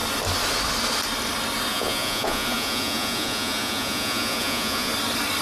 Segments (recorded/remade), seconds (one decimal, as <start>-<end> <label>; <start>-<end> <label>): 0.0-1.7 recorded; 1.7-4.9 remade; 4.9-5.4 recorded